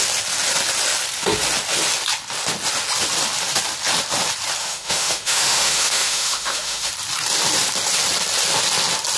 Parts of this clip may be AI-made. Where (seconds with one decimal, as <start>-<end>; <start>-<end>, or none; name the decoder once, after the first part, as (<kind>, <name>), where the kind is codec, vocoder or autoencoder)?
4.6-6.9 (autoencoder, DAC-VAE)